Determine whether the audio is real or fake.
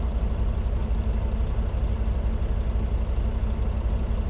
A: real